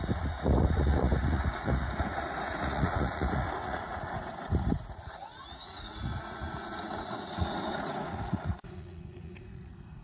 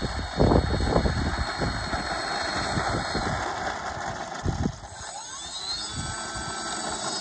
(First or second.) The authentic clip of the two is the second